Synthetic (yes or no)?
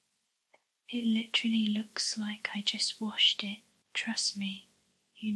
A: no